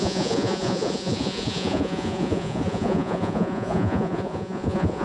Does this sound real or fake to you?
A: fake